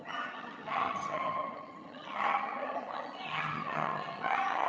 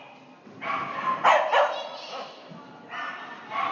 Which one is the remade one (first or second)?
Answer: first